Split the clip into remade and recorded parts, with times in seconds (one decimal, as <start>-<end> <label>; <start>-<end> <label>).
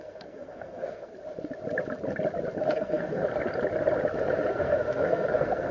0.0-1.1 remade; 1.1-2.7 recorded; 2.7-3.2 remade; 3.2-4.5 recorded; 4.5-5.7 remade